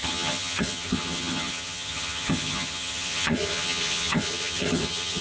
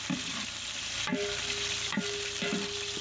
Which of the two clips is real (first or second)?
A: second